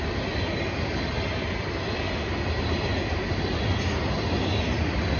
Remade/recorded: recorded